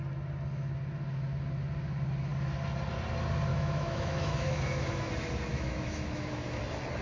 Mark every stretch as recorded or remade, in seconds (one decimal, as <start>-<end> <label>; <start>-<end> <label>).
0.0-3.5 recorded; 3.5-5.1 remade; 5.1-5.5 recorded; 5.5-6.6 remade; 6.6-7.0 recorded